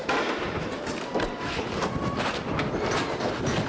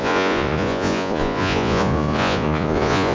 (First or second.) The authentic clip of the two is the first